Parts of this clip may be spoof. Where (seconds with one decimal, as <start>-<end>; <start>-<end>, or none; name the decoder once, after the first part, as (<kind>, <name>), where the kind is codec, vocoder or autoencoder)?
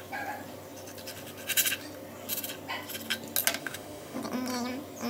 3.6-4.2 (autoencoder, DAC-VAE)